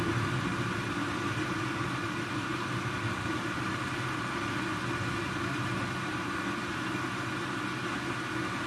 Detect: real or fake real